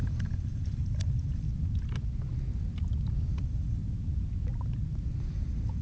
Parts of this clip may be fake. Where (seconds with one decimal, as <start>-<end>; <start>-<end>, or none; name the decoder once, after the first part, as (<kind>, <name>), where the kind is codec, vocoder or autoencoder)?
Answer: 0.0-1.5 (vocoder, BigVGAN v2); 3.3-3.8; 5.2-5.8